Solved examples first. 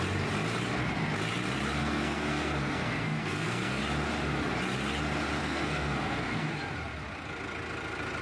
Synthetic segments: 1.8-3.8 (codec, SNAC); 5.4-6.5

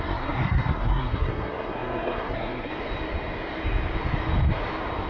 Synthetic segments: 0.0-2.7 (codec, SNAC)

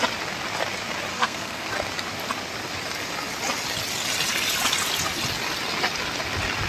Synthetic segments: 1.1-1.7 (codec, SNAC)